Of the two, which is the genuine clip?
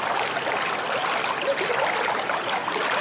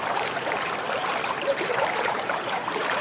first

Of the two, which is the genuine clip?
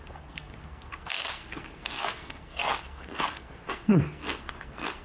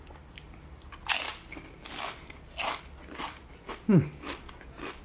second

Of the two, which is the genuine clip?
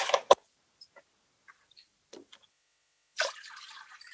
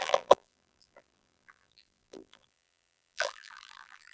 first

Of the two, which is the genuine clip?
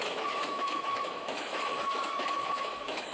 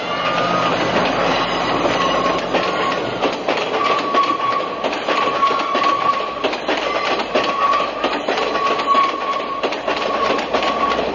second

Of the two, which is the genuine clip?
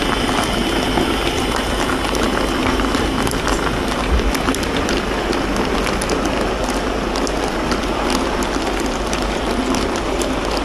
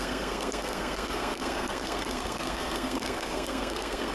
first